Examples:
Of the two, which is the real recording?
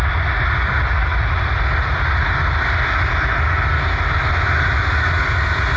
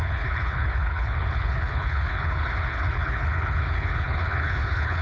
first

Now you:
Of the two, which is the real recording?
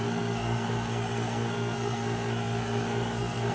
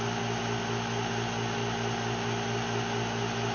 second